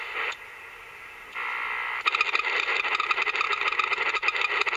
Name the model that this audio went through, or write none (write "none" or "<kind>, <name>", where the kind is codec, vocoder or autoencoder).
none